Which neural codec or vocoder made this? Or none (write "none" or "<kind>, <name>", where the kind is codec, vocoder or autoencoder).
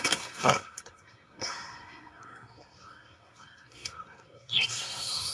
codec, SNAC